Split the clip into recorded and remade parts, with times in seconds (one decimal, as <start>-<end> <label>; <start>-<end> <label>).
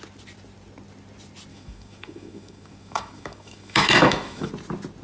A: 0.0-1.5 recorded; 1.5-4.5 remade; 4.5-5.0 recorded